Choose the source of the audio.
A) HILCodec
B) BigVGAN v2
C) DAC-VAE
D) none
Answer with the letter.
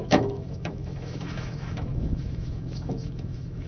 C